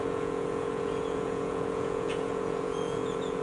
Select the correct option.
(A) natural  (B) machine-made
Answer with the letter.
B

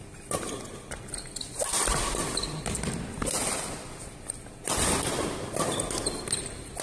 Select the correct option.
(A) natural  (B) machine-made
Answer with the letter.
A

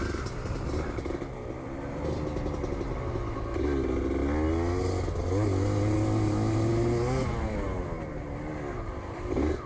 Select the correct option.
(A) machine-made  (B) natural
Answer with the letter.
B